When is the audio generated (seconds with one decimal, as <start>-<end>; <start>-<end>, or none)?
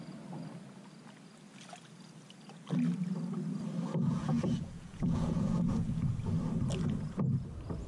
4.0-6.1